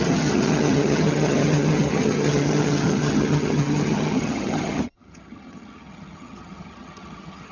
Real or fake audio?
fake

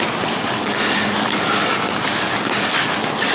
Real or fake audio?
real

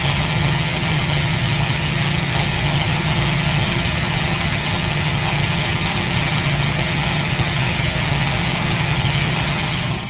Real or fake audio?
fake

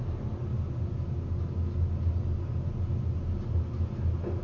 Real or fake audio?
real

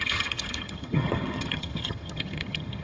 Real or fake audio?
fake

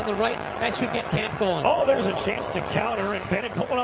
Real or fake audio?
fake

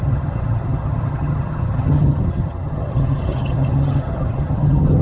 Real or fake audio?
fake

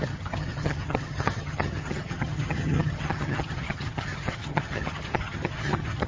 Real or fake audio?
fake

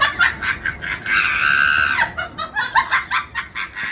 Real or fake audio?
real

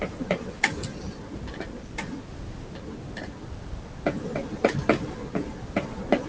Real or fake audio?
real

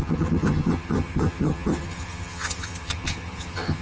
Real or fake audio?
fake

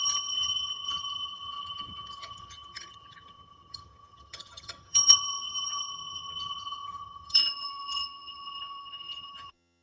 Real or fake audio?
fake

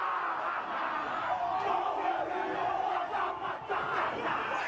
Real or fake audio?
real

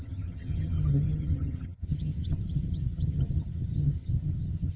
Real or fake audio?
fake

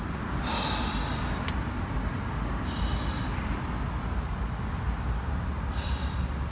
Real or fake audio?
real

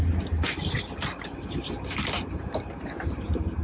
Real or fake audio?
real